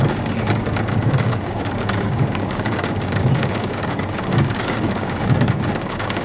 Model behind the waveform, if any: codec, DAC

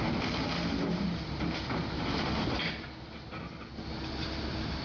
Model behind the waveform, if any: none